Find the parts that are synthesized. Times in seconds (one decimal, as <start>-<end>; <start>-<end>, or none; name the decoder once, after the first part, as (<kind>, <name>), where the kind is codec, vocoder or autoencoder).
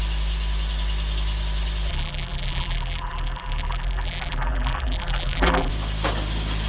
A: 1.9-5.7 (vocoder, BigVGAN v2)